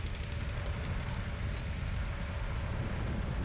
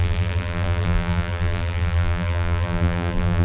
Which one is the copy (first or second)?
second